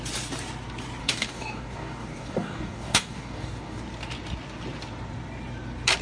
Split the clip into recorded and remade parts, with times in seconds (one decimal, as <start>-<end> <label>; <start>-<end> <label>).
0.0-1.0 recorded; 1.0-3.8 remade; 3.8-6.0 recorded